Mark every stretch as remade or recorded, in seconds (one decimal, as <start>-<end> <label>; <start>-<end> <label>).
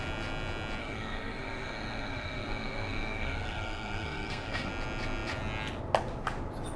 0.0-0.8 recorded; 0.8-4.7 remade; 4.7-6.8 recorded